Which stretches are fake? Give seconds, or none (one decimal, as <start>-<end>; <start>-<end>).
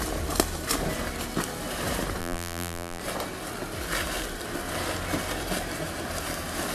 2.2-3.0